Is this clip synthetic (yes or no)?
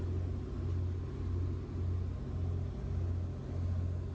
no